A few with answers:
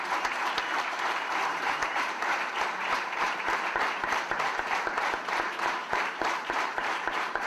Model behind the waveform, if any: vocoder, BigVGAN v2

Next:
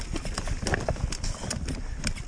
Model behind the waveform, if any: none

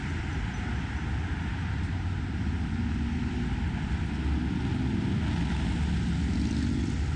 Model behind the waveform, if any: none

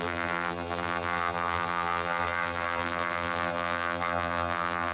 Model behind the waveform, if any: vocoder, BigVGAN v2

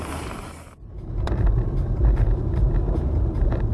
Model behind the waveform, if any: vocoder, BigVGAN v2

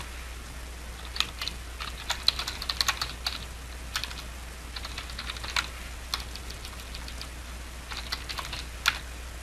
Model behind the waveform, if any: none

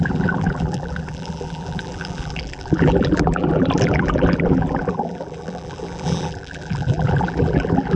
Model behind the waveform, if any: vocoder, BigVGAN v2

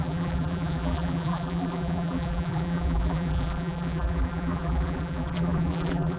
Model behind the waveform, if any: vocoder, BigVGAN v2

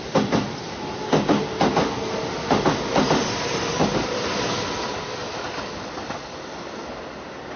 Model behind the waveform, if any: none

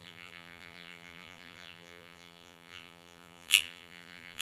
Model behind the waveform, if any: vocoder, BigVGAN v2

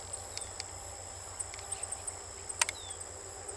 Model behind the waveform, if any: none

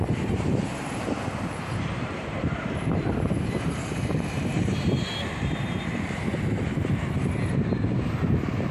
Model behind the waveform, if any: vocoder, BigVGAN v2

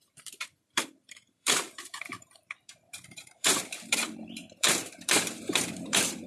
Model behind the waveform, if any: vocoder, BigVGAN v2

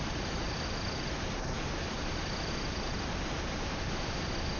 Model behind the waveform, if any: vocoder, BigVGAN v2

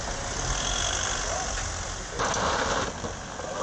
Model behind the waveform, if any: none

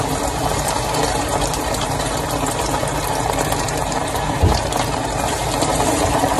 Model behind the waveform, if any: vocoder, BigVGAN v2